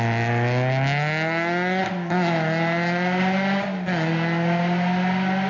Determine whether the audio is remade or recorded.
recorded